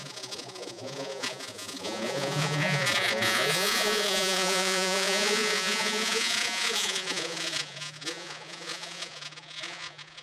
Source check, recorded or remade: remade